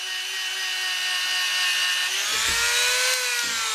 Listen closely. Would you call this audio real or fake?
real